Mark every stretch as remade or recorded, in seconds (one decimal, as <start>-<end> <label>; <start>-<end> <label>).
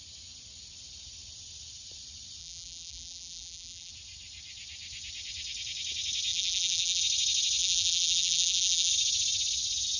0.0-2.4 recorded; 2.4-3.9 remade; 3.9-6.3 recorded; 6.3-7.0 remade; 7.0-7.6 recorded; 7.6-8.9 remade; 8.9-10.0 recorded